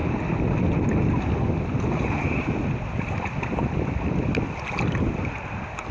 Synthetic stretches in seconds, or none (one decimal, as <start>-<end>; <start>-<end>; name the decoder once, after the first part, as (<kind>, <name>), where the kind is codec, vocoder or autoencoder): none